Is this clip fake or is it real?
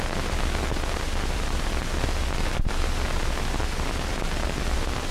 real